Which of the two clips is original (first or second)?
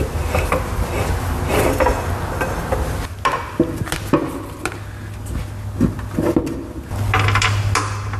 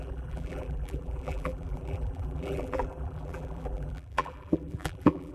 first